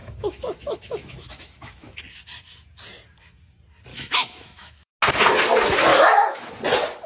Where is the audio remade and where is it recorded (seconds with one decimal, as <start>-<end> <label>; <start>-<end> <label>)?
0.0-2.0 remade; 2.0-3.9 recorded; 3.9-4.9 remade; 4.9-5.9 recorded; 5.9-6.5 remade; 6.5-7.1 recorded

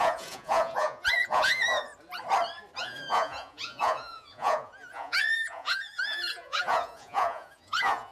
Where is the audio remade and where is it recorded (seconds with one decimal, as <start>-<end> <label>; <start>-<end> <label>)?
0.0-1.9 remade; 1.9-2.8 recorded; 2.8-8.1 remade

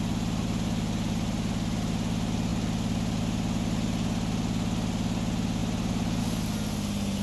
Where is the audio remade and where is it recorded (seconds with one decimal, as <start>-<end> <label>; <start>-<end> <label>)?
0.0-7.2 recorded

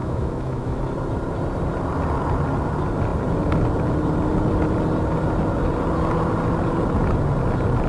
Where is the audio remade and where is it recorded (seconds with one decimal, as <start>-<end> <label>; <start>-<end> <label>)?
0.0-0.8 remade; 0.8-7.9 recorded

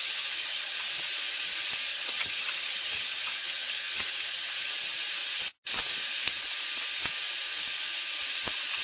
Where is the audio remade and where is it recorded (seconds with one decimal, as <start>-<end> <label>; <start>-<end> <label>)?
0.0-0.9 remade; 0.9-1.9 recorded; 1.9-4.7 remade; 4.7-8.8 recorded